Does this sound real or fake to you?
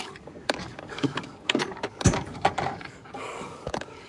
fake